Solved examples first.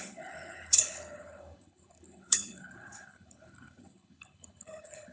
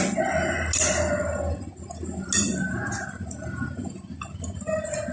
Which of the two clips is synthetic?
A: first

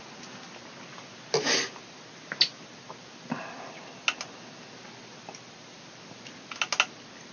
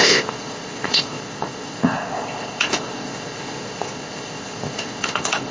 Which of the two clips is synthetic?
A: second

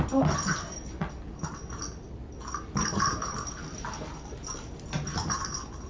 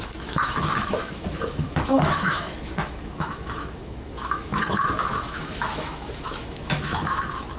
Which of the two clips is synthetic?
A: second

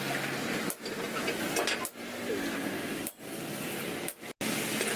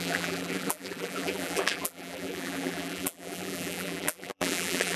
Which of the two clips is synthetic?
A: second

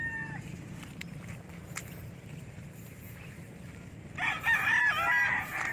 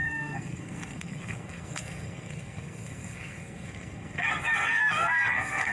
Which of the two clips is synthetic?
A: second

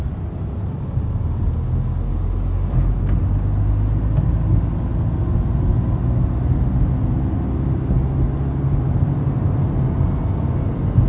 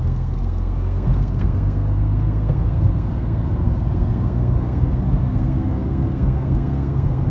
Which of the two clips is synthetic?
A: second